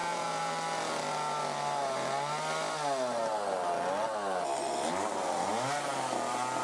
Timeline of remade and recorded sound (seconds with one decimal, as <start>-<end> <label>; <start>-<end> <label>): 0.0-0.5 remade; 0.5-6.6 recorded